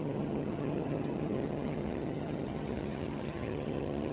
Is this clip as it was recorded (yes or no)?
no